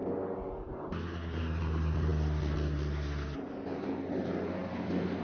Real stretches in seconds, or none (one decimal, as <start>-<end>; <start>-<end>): 0.0-5.2